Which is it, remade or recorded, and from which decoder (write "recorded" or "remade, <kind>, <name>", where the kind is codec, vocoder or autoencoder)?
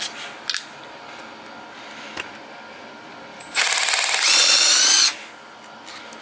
recorded